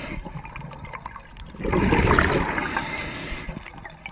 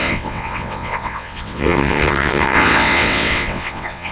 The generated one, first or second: second